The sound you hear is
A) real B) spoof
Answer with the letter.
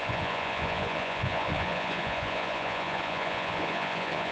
B